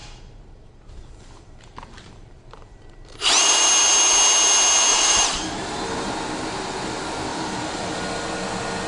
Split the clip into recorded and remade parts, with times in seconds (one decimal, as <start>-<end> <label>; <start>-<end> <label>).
0.0-3.6 remade; 3.6-4.9 recorded; 4.9-6.1 remade; 6.1-7.3 recorded; 7.3-8.0 remade; 8.0-8.9 recorded